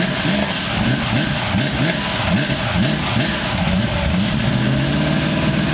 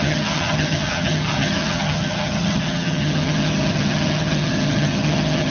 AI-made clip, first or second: second